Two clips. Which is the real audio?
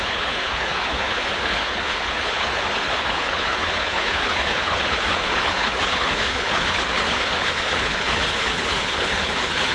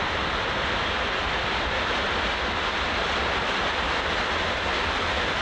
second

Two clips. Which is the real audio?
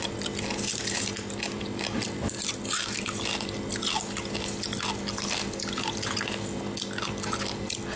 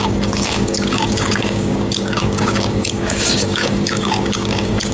first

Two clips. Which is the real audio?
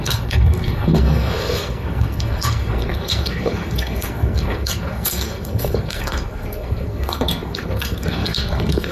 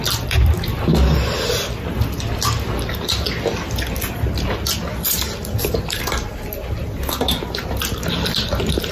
second